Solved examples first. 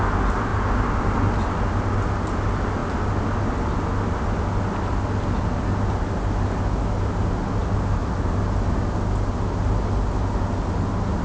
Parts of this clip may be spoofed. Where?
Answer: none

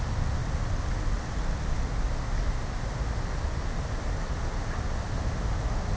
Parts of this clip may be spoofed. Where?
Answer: none

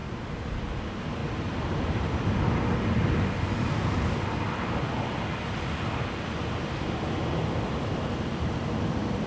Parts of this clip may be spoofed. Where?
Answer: 1.2-2.1 (vocoder, BigVGAN v2); 8.3-9.3

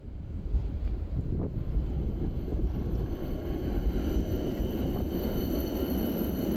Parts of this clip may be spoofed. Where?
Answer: 0.6-1.2 (vocoder, BigVGAN v2); 2.5-3.1

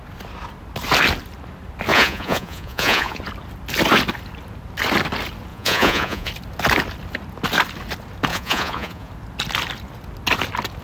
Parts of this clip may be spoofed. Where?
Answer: 1.9-3.2 (vocoder, Vocos); 5.5-6.3; 8.3-9.1

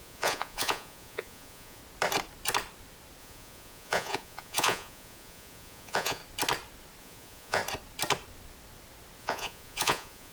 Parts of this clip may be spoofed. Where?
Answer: 0.0-1.8 (vocoder, Vocos); 3.2-6.2; 7.0-7.6; 9.2-10.3